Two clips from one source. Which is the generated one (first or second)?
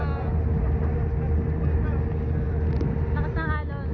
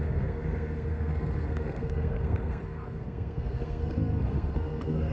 second